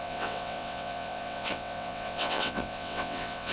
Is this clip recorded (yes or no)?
no